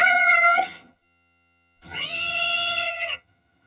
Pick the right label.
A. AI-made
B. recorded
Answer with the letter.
A